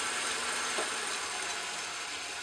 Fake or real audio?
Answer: real